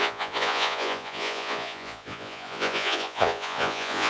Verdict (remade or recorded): remade